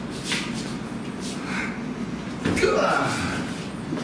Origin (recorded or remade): recorded